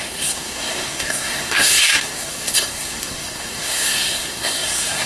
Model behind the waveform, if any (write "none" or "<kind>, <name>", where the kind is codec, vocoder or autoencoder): codec, SNAC